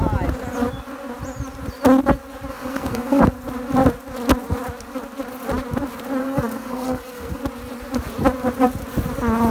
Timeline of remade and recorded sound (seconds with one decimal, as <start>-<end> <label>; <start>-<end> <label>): 0.0-2.5 recorded; 2.5-3.2 remade; 3.2-6.2 recorded; 6.2-7.4 remade; 7.4-9.5 recorded

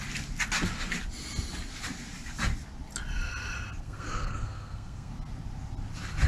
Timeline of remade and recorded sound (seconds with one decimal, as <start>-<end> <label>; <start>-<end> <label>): 0.0-3.8 recorded; 3.8-5.1 remade; 5.1-6.3 recorded